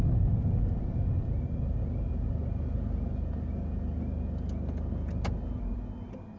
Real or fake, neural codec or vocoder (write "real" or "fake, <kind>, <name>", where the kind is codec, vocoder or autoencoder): real